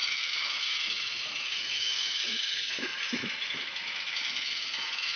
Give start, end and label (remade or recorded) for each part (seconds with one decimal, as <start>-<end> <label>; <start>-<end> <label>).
0.0-5.2 remade